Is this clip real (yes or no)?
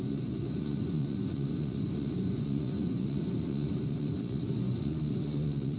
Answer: no